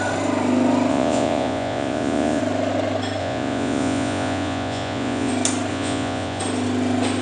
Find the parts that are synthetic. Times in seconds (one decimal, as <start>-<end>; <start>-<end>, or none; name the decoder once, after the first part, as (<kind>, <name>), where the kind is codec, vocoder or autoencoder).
0.9-2.4 (vocoder, Vocos); 3.2-5.3; 5.7-6.4